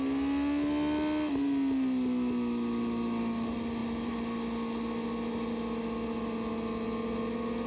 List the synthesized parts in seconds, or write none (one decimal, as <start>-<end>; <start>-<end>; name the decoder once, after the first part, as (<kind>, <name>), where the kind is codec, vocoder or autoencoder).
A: none